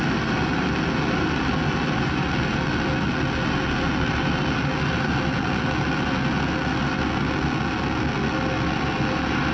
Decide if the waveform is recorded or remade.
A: recorded